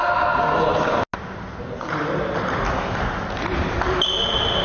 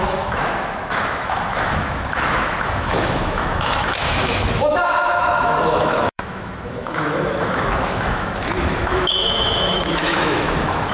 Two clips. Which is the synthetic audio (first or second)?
second